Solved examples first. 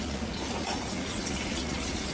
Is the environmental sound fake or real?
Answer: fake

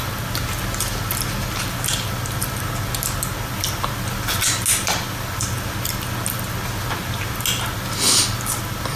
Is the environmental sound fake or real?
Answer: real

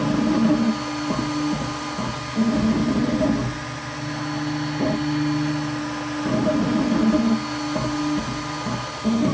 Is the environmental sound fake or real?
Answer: real